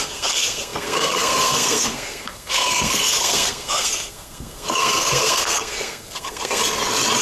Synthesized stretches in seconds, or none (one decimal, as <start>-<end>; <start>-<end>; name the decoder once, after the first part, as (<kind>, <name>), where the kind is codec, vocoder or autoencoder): 0.0-6.6 (codec, SNAC)